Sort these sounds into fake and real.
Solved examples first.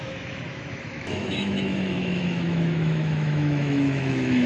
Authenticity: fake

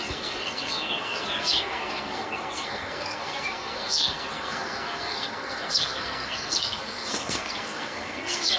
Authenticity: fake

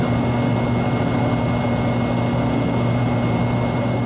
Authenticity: real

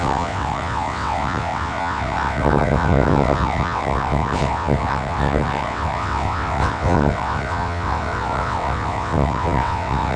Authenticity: fake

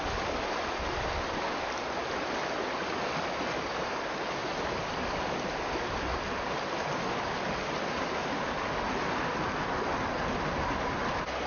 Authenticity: real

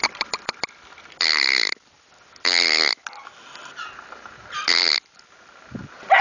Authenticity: real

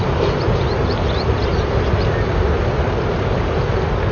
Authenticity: real